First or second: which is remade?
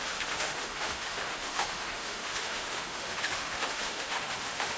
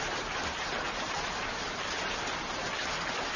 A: first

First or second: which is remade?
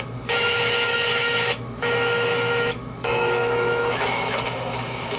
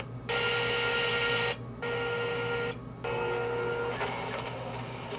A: first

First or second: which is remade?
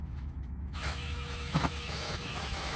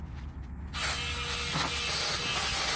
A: first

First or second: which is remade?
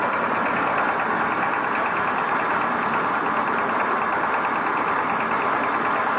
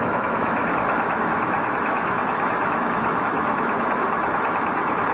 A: second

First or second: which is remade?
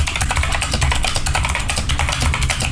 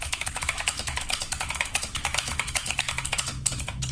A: second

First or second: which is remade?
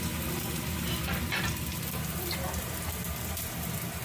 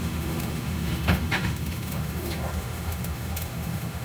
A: second